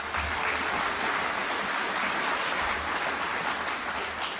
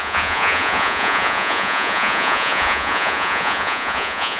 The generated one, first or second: second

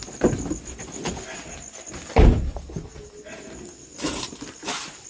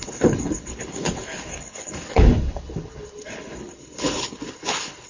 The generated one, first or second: second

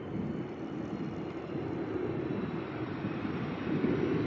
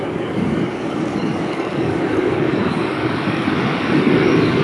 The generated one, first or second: second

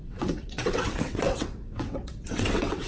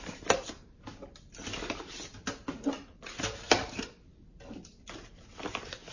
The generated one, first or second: first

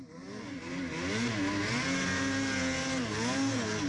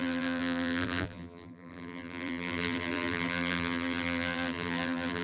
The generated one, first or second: second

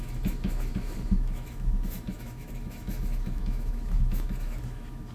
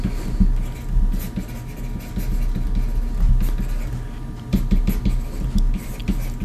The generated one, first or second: first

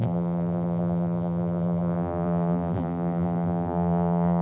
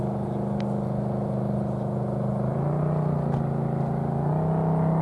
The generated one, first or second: first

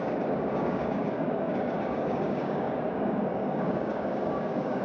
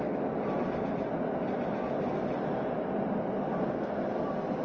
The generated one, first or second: first